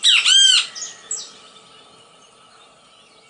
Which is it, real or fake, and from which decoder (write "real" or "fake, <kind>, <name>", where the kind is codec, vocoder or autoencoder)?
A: real